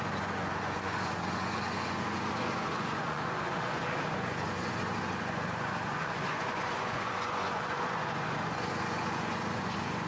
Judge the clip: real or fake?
fake